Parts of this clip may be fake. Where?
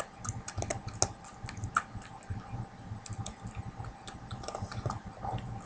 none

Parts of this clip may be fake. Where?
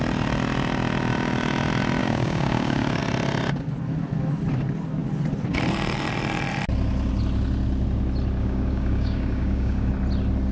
2.0-3.0; 8.4-9.9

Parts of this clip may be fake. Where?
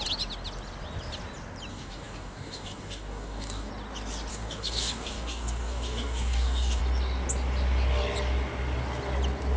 1.7-3.7; 4.3-6.8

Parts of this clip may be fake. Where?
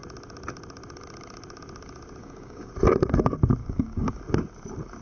2.2-2.7; 3.6-4.2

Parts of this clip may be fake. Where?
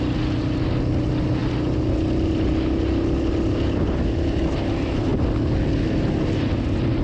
none